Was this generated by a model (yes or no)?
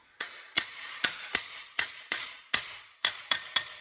yes